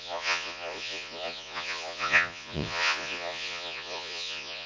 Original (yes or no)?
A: no